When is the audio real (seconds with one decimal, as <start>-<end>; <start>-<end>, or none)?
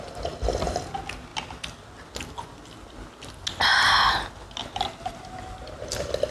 0.0-6.3